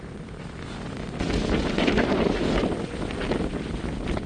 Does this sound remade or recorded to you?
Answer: recorded